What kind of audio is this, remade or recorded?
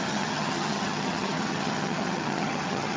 remade